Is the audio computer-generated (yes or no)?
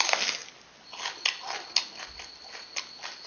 no